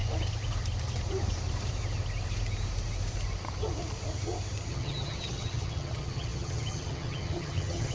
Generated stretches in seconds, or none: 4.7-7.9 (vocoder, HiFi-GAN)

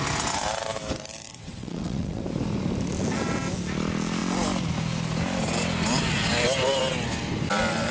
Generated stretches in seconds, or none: 1.4-2.2 (vocoder, WaveNeXt)

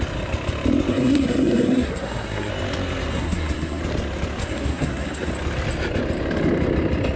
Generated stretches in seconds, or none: 0.9-2.5 (codec, SNAC); 3.1-3.8; 4.4-5.3

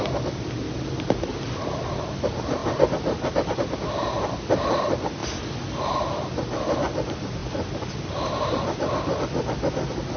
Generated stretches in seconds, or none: none

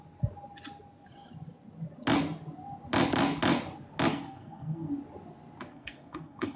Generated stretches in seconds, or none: 4.1-4.9 (codec, SNAC); 5.7-6.6

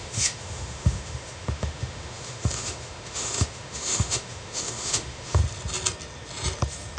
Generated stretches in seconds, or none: 0.0-5.4 (autoencoder, DAC-VAE)